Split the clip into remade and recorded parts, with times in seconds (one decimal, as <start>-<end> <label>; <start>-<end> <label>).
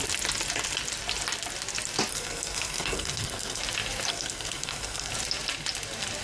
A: 0.0-2.1 recorded; 2.1-3.6 remade; 3.6-4.1 recorded; 4.1-5.1 remade; 5.1-6.2 recorded